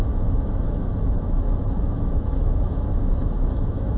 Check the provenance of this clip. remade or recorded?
remade